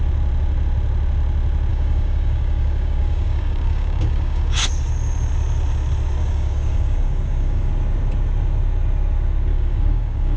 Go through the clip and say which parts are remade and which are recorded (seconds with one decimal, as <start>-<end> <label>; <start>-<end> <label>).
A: 0.0-1.7 recorded; 1.7-4.6 remade; 4.6-6.2 recorded; 6.2-7.7 remade; 7.7-9.5 recorded; 9.5-10.4 remade